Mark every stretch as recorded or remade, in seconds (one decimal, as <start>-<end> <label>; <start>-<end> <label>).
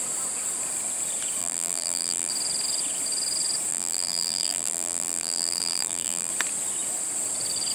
0.0-1.4 recorded; 1.4-2.3 remade; 2.3-3.7 recorded; 3.7-6.3 remade; 6.3-7.7 recorded